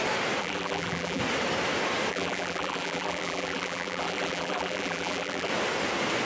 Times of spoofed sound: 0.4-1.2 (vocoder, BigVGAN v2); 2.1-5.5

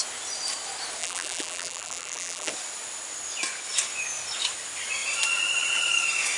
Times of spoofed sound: 1.0-2.5 (vocoder, BigVGAN v2)

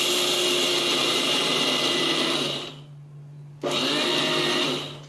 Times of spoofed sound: 1.0-2.7 (vocoder, BigVGAN v2)

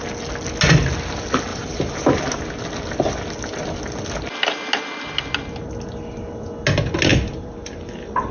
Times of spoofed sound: 1.5-2.2 (vocoder, BigVGAN v2); 7.1-8.3

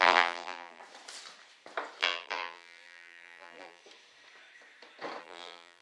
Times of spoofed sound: 0.0-0.8 (vocoder, BigVGAN v2); 2.0-3.8; 5.2-5.8

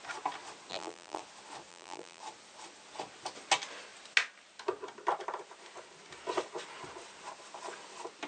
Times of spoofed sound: 0.7-1.2 (vocoder, BigVGAN v2); 1.7-2.2

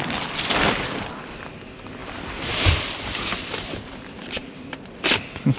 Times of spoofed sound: 2.0-5.6 (vocoder, BigVGAN v2)